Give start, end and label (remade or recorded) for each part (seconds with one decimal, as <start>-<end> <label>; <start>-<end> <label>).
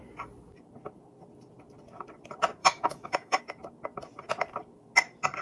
0.0-2.6 recorded; 2.6-3.4 remade; 3.4-5.4 recorded